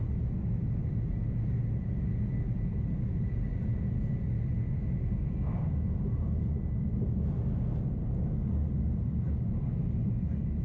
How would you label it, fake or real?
real